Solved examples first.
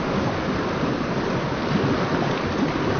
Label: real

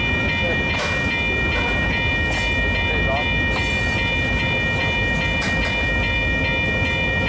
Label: real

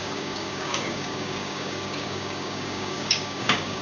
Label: fake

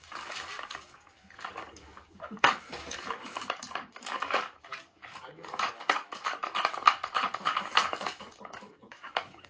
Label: fake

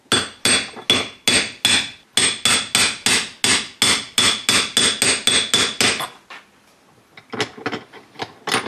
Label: real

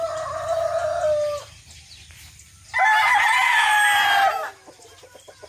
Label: real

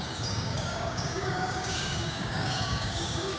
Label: fake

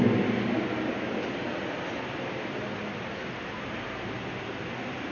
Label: real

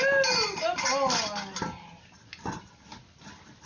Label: real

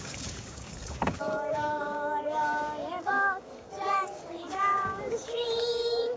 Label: fake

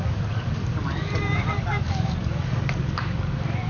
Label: fake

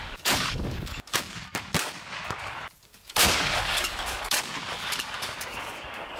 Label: fake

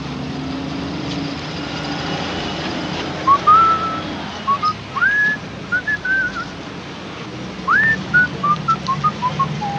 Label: real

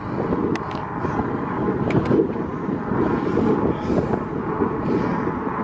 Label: real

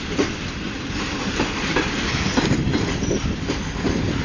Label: real